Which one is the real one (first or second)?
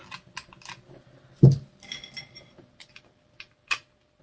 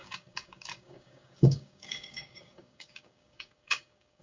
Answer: first